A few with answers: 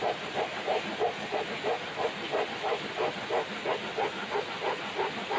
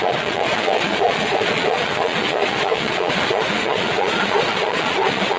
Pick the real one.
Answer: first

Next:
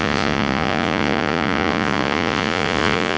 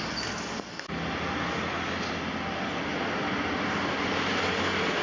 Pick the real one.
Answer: second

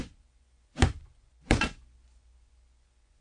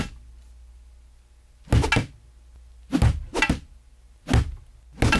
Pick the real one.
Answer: second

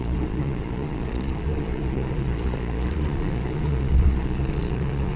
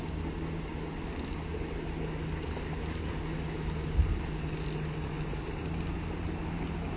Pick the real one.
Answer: second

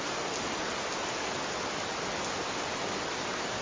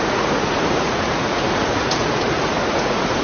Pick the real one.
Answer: first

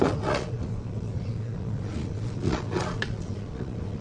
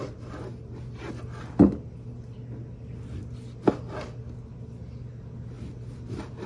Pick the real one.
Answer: second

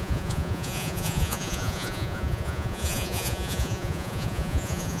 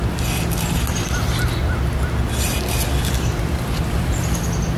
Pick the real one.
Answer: second